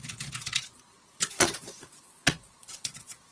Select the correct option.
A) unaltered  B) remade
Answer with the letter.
B